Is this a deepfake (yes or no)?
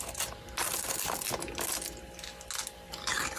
no